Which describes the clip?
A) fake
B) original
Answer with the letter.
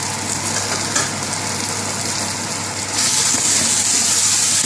B